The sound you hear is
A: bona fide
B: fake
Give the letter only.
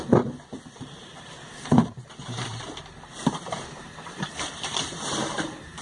B